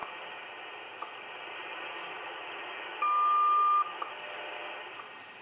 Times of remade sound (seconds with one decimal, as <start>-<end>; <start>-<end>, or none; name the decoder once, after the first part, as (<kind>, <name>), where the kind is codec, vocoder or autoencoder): 2.0-4.1 (autoencoder, DAC-VAE)